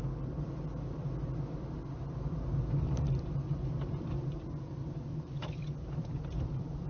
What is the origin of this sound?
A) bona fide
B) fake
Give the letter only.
B